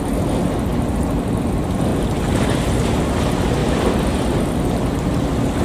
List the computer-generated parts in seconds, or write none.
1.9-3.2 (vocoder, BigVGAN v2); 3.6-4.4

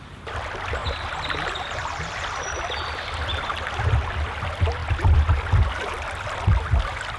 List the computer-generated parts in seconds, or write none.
none

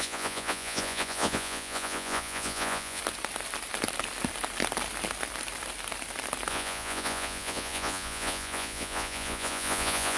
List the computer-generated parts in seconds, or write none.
0.0-3.0 (vocoder, Vocos); 6.5-10.2

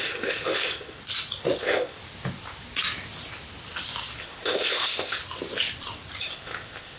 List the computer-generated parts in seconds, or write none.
0.0-1.0 (codec, ZipCodec); 1.6-2.0; 4.2-5.2; 6.2-7.0

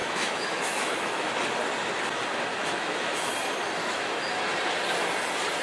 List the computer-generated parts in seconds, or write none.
0.0-1.3 (autoencoder, DAC-VAE); 2.5-3.3; 3.8-4.4

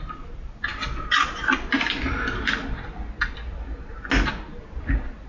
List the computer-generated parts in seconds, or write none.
none